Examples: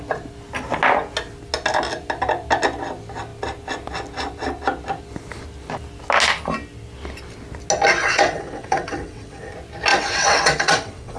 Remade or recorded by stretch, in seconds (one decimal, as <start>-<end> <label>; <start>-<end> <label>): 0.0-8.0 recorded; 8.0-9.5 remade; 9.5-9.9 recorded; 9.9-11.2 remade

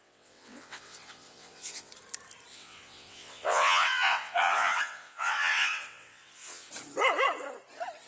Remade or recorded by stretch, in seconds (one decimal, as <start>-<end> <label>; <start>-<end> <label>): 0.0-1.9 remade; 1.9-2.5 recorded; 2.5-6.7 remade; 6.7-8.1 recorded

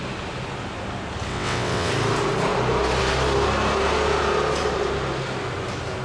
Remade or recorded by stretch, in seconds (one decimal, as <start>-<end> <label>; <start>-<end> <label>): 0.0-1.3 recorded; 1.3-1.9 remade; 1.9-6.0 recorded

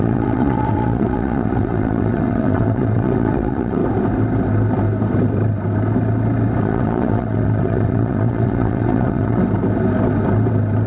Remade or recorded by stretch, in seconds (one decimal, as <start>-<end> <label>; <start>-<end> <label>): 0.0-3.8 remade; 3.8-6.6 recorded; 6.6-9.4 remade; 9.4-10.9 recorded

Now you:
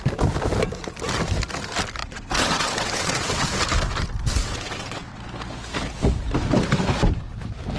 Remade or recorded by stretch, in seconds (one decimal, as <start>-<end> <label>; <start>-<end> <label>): 0.0-2.0 recorded; 2.0-3.5 remade; 3.5-4.4 recorded; 4.4-5.2 remade; 5.2-7.8 recorded

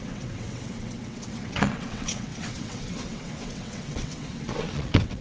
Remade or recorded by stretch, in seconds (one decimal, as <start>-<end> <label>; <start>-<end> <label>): 0.0-5.2 remade

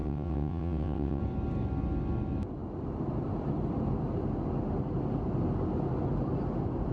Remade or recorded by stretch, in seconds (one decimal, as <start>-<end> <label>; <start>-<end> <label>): 0.0-1.2 remade; 1.2-6.9 recorded